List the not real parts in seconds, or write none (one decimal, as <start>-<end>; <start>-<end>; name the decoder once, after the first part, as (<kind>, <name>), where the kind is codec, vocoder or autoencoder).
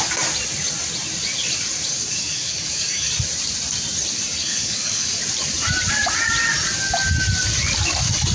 1.9-3.1 (codec, DAC); 4.4-5.2